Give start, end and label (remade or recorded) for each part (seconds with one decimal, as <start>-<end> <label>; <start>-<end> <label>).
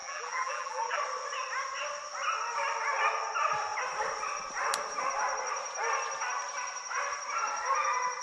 0.0-1.0 remade; 1.0-8.2 recorded